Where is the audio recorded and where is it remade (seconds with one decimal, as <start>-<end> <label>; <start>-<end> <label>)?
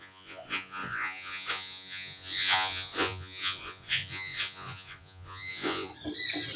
0.0-5.9 remade; 5.9-6.6 recorded